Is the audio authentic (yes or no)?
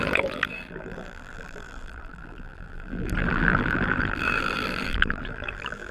no